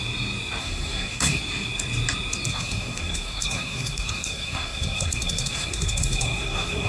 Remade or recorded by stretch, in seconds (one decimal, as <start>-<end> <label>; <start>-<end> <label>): 0.0-0.6 recorded; 0.6-1.4 remade; 1.4-2.5 recorded; 2.5-6.9 remade